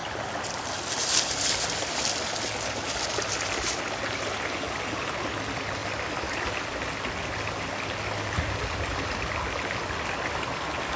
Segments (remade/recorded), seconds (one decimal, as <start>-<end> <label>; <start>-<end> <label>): 0.0-11.0 recorded